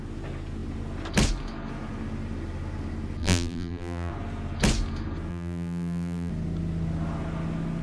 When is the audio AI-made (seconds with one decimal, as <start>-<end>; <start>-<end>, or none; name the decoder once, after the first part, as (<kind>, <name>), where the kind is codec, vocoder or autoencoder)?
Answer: 3.2-4.1 (vocoder, BigVGAN v2); 5.3-6.3